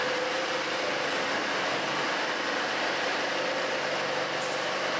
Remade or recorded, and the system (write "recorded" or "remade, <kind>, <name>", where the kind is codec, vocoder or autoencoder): recorded